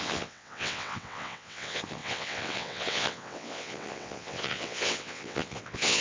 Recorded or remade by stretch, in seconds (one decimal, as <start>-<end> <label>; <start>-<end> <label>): 0.0-6.0 remade